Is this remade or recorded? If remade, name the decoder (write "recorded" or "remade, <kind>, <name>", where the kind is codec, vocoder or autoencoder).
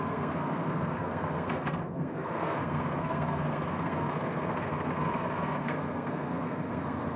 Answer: remade, codec, SNAC